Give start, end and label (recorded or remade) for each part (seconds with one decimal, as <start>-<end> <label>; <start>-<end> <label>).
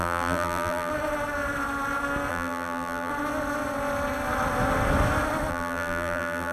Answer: 0.0-0.9 remade; 0.9-2.3 recorded; 2.3-3.1 remade; 3.1-5.5 recorded; 5.5-6.5 remade